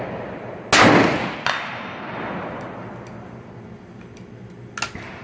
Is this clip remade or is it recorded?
recorded